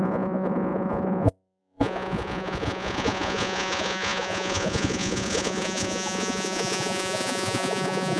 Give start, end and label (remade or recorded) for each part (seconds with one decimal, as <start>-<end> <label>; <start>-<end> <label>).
0.0-8.2 remade